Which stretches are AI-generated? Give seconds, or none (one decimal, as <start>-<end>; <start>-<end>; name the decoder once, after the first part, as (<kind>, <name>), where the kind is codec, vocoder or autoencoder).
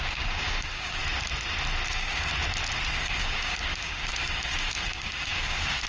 0.0-1.0 (codec, DAC); 1.9-2.3; 2.9-5.9